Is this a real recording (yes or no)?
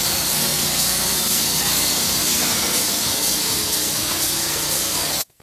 no